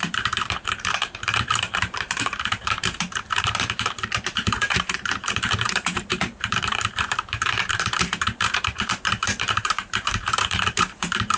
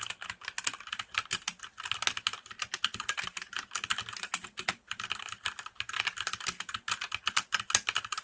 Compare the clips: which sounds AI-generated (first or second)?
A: first